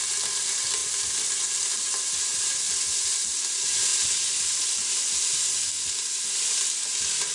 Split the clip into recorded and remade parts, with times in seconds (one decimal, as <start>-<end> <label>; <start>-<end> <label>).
0.0-0.8 recorded; 0.8-1.6 remade; 1.6-7.3 recorded

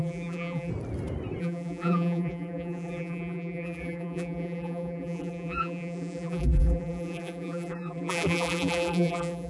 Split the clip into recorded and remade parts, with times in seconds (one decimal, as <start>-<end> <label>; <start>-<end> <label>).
0.0-0.7 remade; 0.7-1.4 recorded; 1.4-9.5 remade

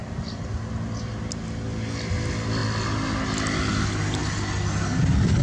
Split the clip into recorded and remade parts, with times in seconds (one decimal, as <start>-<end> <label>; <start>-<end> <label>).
0.0-5.4 recorded

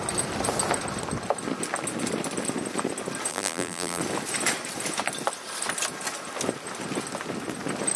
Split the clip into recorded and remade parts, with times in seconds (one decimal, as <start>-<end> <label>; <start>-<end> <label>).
0.0-3.3 recorded; 3.3-4.0 remade; 4.0-8.0 recorded

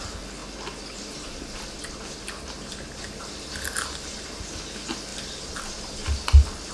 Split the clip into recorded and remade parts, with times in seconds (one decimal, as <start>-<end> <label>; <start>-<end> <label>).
0.0-6.7 recorded

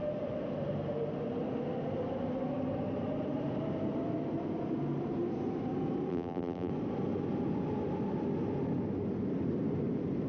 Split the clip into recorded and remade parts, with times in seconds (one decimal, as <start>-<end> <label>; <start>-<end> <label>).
0.0-6.1 recorded; 6.1-6.7 remade; 6.7-10.3 recorded